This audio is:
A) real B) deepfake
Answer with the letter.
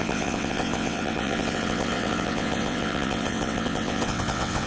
B